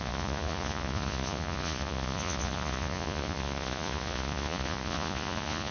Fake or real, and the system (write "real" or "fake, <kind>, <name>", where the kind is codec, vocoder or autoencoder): fake, vocoder, Vocos